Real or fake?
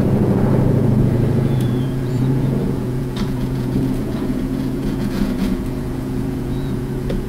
fake